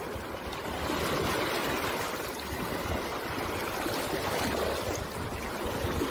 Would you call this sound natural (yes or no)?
yes